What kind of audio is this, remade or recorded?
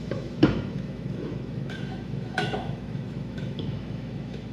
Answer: remade